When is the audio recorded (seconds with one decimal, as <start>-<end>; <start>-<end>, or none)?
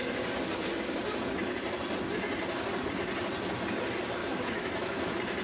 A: 0.0-4.2; 5.0-5.4